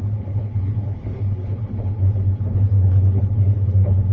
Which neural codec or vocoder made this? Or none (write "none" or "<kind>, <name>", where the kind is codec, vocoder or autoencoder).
codec, HILCodec